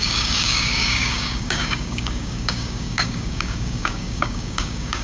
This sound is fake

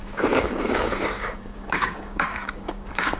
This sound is fake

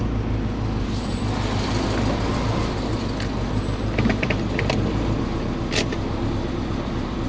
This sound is real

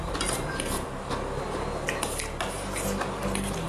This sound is real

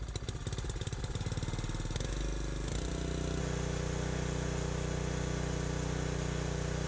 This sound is real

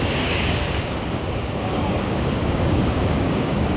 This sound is fake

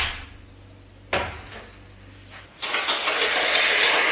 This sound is real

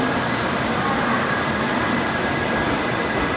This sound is real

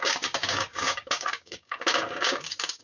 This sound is fake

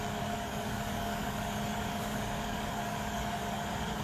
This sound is fake